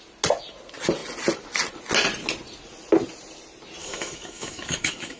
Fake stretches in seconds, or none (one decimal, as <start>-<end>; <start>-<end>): 3.8-5.2